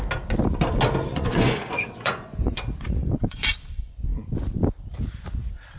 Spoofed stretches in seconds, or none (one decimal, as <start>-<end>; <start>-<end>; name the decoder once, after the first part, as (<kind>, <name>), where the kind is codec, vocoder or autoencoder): 1.1-3.5 (vocoder, Vocos)